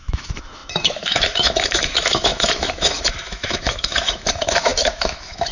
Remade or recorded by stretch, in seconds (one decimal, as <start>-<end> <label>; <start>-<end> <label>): 0.0-5.5 remade